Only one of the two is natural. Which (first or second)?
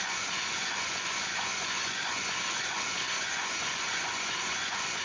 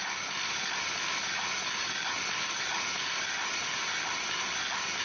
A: second